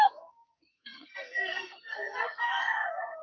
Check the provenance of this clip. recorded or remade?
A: remade